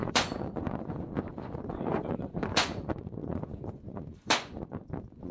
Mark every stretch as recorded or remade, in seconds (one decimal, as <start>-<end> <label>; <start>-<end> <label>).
0.0-5.3 remade